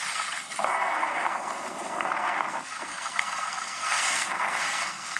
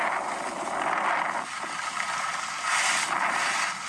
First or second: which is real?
second